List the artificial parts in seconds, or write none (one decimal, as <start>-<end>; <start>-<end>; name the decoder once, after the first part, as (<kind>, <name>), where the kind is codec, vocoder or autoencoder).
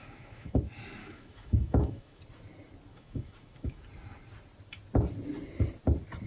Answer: 0.0-0.6 (autoencoder, DAC-VAE); 1.0-2.2; 2.9-3.8